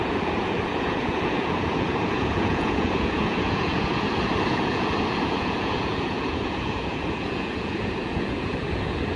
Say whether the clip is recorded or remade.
remade